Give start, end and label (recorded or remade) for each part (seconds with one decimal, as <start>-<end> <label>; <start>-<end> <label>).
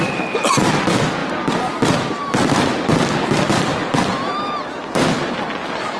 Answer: 0.0-6.0 recorded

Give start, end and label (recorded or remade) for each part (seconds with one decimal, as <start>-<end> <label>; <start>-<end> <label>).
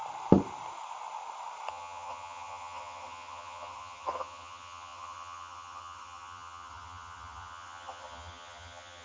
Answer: 0.0-1.7 recorded; 1.7-9.0 remade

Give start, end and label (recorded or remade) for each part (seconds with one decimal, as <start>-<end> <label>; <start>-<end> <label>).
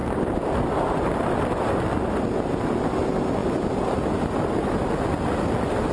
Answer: 0.0-5.9 recorded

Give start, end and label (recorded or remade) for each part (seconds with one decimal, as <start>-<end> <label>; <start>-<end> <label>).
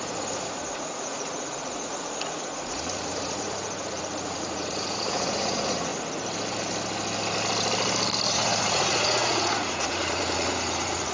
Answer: 0.0-5.9 remade; 5.9-8.3 recorded; 8.3-11.1 remade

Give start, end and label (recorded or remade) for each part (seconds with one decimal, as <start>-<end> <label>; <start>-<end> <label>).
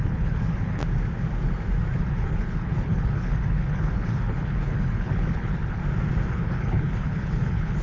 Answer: 0.0-0.8 remade; 0.8-2.0 recorded; 2.0-5.8 remade; 5.8-6.3 recorded; 6.3-7.8 remade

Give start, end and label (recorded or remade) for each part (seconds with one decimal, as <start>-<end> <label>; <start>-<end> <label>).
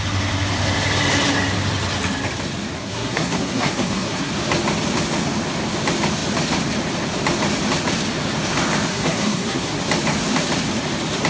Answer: 0.0-2.8 recorded; 2.8-4.3 remade; 4.3-8.9 recorded; 8.9-9.8 remade; 9.8-11.3 recorded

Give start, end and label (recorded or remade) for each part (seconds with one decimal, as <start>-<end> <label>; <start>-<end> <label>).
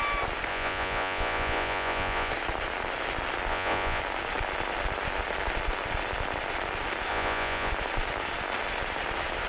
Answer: 0.0-0.5 recorded; 0.5-2.3 remade; 2.3-3.5 recorded; 3.5-4.0 remade; 4.0-7.1 recorded; 7.1-7.7 remade; 7.7-9.5 recorded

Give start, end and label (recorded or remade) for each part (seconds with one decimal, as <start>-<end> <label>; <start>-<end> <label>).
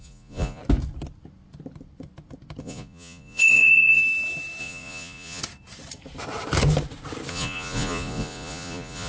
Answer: 0.0-0.6 remade; 0.6-2.6 recorded; 2.6-4.0 remade; 4.0-4.6 recorded; 4.6-5.4 remade; 5.4-7.3 recorded; 7.3-9.1 remade